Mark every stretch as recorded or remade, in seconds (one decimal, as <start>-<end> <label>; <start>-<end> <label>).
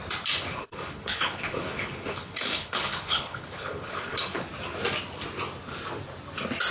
0.0-0.5 recorded; 0.5-4.5 remade; 4.5-6.7 recorded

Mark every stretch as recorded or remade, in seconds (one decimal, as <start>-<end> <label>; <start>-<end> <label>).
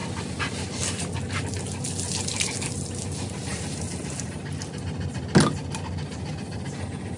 0.0-7.2 recorded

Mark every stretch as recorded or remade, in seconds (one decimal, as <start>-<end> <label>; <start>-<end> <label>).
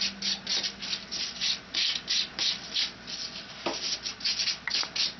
0.0-5.2 recorded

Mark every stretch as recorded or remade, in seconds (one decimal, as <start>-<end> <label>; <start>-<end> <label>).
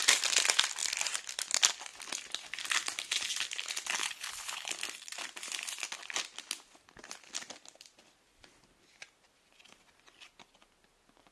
0.0-4.0 recorded; 4.0-4.7 remade; 4.7-11.3 recorded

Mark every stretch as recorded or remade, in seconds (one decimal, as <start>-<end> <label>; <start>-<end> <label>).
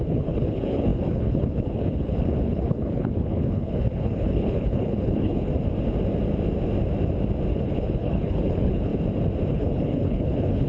0.0-5.5 remade; 5.5-7.5 recorded; 7.5-8.9 remade; 8.9-9.5 recorded; 9.5-10.7 remade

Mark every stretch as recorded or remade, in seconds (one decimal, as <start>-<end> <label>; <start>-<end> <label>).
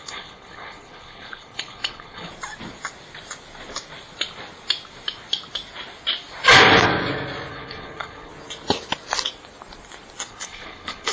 0.0-2.3 remade; 2.3-7.5 recorded; 7.5-8.3 remade; 8.3-10.3 recorded; 10.3-11.1 remade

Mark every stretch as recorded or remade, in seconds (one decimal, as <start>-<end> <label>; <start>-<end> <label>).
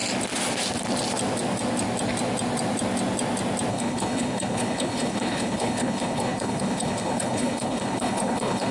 0.0-3.7 recorded; 3.7-8.7 remade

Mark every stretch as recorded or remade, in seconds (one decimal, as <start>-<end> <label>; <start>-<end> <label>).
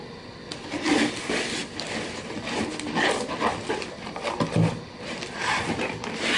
0.0-6.4 recorded